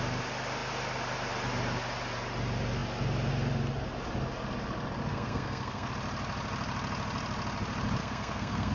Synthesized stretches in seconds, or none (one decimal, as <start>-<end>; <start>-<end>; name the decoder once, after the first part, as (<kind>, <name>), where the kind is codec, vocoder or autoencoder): 5.1-5.9 (codec, SNAC); 8.0-8.7